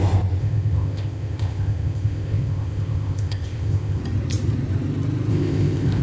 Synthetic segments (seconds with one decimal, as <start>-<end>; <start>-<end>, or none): 0.4-4.0; 5.3-6.0